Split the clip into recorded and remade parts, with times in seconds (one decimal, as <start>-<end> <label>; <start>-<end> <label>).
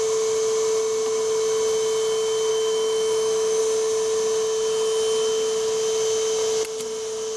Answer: 0.0-2.5 recorded; 2.5-3.6 remade; 3.6-7.4 recorded